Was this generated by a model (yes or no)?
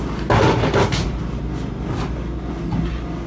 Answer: no